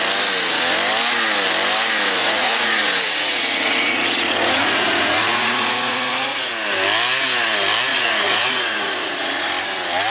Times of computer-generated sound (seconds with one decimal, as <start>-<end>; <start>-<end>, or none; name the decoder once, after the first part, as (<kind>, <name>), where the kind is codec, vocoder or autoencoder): 2.2-6.5 (vocoder, Vocos); 7.9-9.5